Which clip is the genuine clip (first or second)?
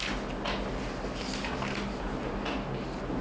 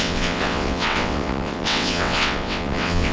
first